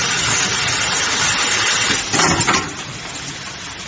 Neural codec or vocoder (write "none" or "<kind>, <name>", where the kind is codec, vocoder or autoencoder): none